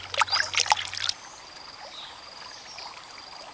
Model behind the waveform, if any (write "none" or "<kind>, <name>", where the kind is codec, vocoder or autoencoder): none